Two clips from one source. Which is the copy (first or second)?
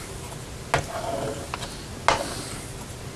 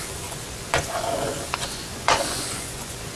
second